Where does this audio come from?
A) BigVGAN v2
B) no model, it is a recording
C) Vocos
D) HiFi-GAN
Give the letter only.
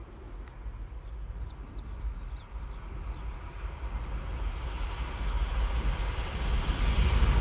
B